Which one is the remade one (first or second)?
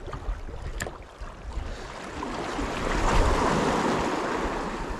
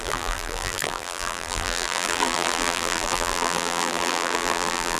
second